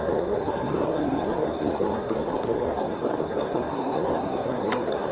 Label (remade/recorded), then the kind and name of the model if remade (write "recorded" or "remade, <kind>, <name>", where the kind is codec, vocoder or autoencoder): remade, codec, SNAC